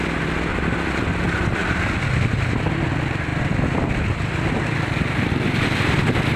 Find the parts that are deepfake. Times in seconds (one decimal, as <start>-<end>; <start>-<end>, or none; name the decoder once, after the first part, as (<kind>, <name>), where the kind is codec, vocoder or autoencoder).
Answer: 0.5-1.1 (vocoder, BigVGAN v2); 1.6-2.7